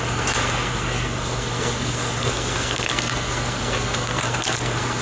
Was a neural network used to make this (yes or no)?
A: yes